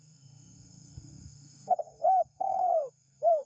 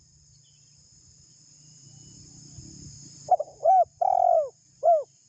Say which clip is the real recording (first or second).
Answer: second